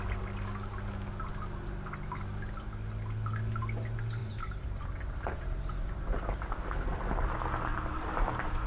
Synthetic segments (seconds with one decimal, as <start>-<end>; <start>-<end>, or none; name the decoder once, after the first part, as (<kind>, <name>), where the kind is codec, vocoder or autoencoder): 4.2-6.6 (vocoder, BigVGAN v2); 7.7-8.7